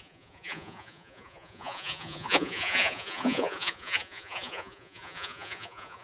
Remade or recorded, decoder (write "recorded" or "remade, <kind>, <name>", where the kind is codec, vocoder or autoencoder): remade, vocoder, Vocos